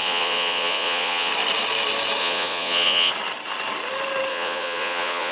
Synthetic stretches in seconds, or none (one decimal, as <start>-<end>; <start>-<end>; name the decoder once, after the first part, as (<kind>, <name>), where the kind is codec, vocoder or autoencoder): 0.0-1.3 (vocoder, Vocos); 2.2-3.1; 4.3-5.3

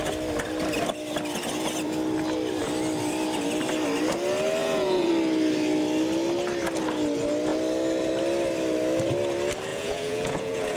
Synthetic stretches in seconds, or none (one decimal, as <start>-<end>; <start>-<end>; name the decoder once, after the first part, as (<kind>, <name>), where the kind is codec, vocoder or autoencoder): 4.6-5.1 (vocoder, Vocos); 9.7-10.8

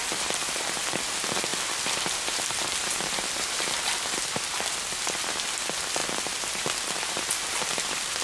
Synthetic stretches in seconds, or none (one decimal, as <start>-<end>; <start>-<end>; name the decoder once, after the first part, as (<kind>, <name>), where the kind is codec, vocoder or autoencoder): none